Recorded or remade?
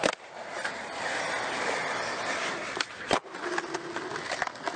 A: recorded